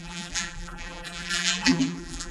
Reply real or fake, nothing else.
fake